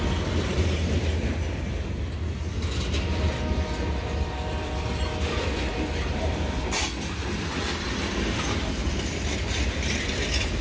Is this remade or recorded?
recorded